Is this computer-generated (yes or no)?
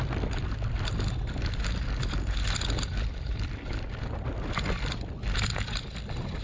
no